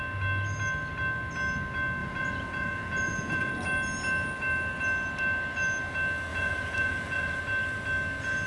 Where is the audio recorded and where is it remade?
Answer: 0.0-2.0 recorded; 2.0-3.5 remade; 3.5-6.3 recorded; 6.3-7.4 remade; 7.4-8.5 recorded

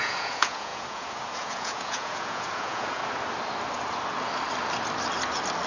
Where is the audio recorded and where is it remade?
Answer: 0.0-3.0 remade; 3.0-5.7 recorded

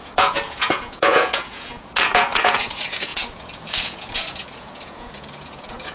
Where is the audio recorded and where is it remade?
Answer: 0.0-5.9 remade

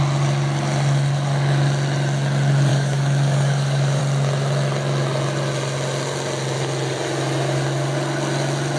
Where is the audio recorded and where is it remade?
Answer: 0.0-2.7 recorded; 2.7-4.0 remade; 4.0-8.8 recorded

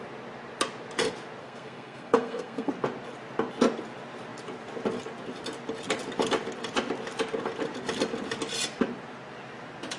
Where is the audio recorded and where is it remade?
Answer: 0.0-1.4 recorded; 1.4-2.7 remade; 2.7-10.0 recorded